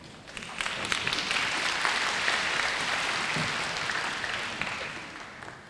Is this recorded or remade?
recorded